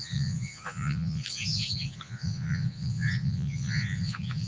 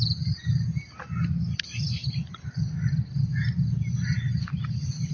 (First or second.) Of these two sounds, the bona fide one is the second